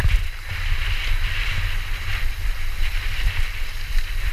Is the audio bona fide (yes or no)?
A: no